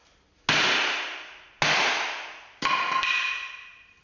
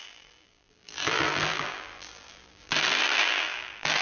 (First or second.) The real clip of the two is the first